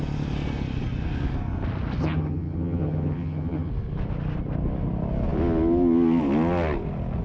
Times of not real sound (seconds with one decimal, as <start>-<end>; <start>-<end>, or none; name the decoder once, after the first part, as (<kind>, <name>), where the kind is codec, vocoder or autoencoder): 2.0-3.7 (vocoder, HiFi-GAN)